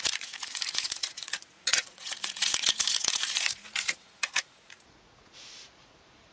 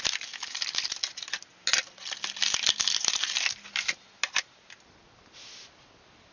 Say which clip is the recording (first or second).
second